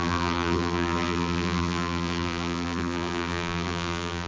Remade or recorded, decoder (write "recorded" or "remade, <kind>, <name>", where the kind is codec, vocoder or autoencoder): remade, vocoder, BigVGAN v2